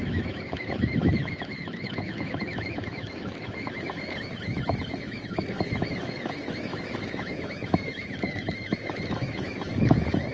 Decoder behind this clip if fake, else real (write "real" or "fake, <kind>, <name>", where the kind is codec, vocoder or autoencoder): fake, autoencoder, DAC-VAE